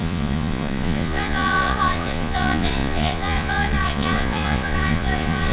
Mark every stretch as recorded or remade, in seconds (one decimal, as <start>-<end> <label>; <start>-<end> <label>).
0.0-5.5 remade